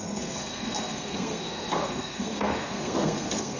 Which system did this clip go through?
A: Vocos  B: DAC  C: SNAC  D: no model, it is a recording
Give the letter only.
C